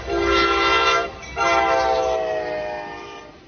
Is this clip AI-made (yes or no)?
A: no